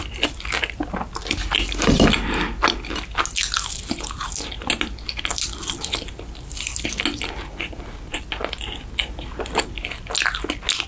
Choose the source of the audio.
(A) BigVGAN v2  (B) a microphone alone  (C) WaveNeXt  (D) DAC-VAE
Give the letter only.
B